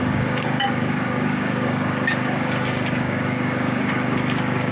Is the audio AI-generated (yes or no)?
yes